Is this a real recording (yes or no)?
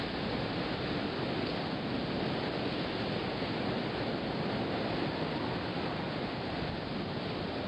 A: yes